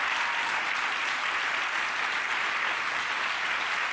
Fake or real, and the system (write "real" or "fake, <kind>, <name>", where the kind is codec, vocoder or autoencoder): real